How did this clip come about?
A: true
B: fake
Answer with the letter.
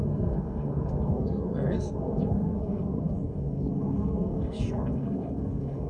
B